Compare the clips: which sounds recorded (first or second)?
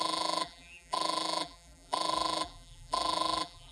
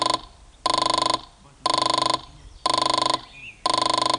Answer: second